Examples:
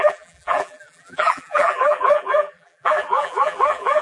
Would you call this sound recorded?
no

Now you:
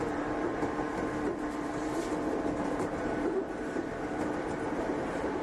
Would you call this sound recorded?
no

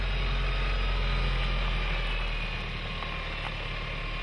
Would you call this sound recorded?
yes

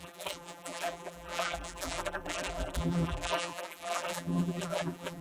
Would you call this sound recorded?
no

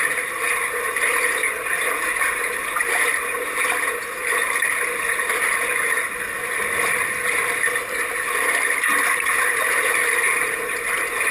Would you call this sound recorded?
no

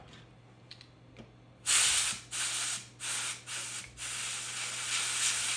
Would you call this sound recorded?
yes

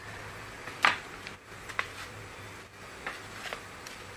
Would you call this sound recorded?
yes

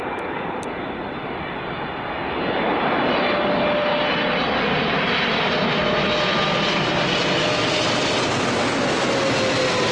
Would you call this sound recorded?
yes